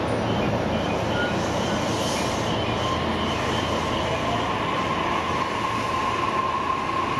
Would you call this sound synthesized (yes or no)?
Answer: no